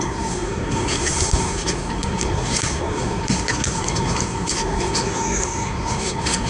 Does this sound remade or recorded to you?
remade